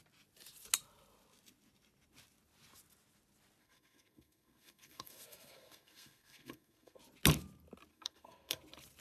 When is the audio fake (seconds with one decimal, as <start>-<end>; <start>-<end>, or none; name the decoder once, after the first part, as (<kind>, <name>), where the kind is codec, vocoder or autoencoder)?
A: 3.6-7.0 (codec, SNAC); 7.9-8.6